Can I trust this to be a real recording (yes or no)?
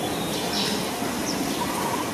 yes